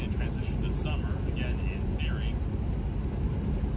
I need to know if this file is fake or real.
real